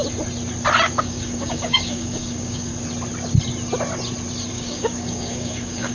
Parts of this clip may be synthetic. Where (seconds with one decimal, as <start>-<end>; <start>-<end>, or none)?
1.0-2.7; 4.5-5.9